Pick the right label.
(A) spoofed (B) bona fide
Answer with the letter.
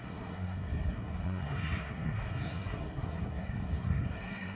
A